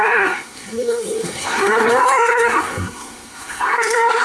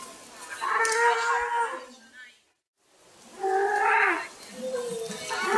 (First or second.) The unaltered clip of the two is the second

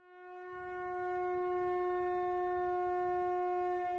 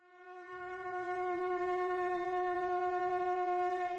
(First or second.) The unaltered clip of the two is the first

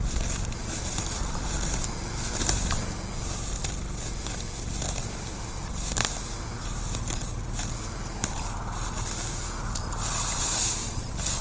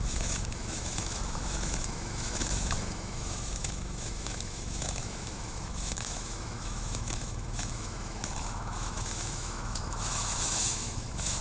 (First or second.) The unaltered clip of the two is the first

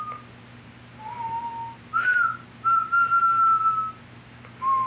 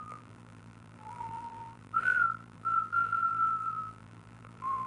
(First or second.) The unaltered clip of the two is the first